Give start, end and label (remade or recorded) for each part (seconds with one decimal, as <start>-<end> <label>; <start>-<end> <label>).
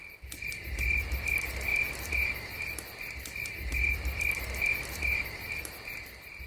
0.0-6.5 recorded